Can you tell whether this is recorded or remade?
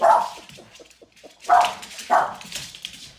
recorded